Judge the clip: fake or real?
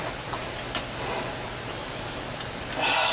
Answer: real